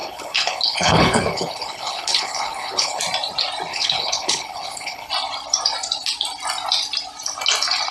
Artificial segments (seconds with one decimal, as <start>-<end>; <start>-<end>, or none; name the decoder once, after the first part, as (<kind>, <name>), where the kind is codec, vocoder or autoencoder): 0.0-3.0 (codec, HILCodec); 3.7-5.1